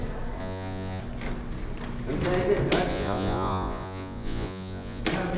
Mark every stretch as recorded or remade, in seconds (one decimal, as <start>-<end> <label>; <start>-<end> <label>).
0.0-0.4 recorded; 0.4-1.0 remade; 1.0-2.9 recorded; 2.9-5.0 remade; 5.0-5.4 recorded